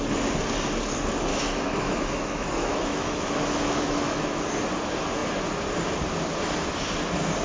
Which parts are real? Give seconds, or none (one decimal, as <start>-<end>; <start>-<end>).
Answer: 0.0-1.3; 4.4-7.4